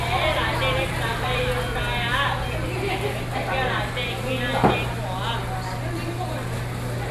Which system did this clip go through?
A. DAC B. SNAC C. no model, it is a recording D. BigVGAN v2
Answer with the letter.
C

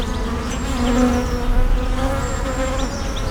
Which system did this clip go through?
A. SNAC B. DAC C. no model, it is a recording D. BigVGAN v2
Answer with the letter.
C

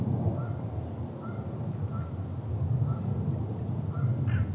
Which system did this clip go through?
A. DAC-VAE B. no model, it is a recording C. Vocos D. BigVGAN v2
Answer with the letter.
B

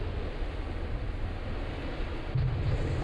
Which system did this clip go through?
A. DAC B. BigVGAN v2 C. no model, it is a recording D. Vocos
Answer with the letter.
C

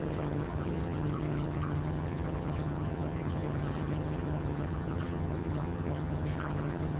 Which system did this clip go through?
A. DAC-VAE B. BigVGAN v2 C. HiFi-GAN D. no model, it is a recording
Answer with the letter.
C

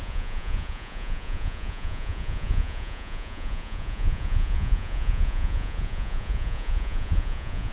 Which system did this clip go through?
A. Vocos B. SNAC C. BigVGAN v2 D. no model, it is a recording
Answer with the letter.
A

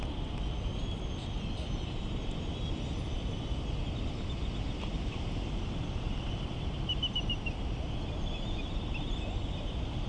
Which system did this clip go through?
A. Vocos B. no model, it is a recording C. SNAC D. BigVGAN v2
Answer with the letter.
B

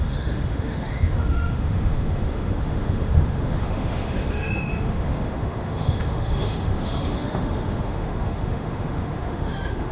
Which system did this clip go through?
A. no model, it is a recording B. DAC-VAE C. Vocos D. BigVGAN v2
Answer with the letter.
B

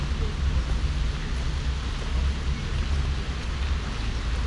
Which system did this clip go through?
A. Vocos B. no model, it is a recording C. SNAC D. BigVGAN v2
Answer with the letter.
B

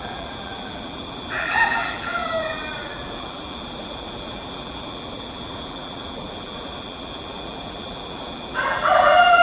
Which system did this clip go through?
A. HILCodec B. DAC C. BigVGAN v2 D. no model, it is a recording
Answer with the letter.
C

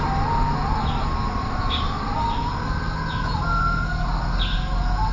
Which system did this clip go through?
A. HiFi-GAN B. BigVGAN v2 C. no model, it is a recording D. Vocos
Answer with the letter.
C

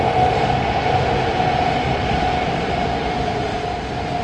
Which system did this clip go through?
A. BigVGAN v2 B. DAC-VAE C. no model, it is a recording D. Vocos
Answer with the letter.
C